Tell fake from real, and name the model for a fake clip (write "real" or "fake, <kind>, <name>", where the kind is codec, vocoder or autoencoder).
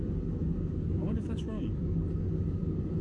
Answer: fake, codec, DAC